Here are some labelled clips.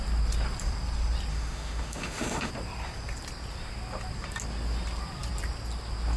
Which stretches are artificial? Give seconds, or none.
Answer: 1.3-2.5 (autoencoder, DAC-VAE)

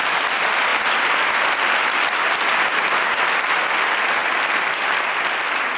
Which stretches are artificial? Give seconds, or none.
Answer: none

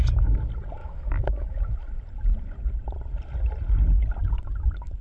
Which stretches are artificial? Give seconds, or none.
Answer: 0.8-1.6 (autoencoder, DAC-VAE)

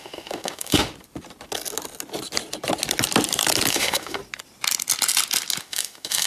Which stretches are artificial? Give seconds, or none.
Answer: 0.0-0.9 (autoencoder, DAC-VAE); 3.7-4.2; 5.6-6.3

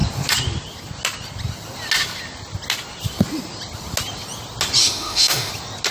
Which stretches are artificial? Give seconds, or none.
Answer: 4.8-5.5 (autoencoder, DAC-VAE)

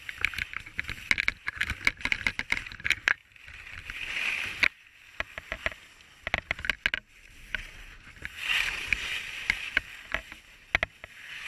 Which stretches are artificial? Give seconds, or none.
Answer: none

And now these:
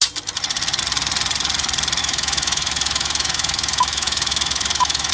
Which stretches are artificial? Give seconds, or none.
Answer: 2.0-5.1 (autoencoder, DAC-VAE)

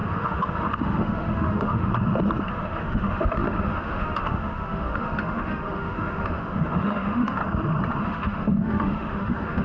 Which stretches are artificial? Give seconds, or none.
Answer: 0.0-1.9 (autoencoder, DAC-VAE); 2.5-7.4; 8.0-9.6